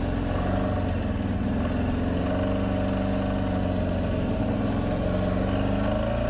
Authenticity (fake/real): real